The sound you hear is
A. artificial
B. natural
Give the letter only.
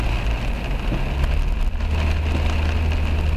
B